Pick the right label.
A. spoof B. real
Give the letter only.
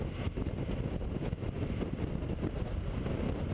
B